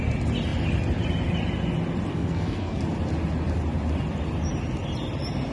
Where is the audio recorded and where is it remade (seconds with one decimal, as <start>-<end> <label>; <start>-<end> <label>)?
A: 0.0-2.1 recorded; 2.1-2.8 remade; 2.8-5.5 recorded